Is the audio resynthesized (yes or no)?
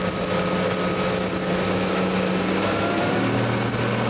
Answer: no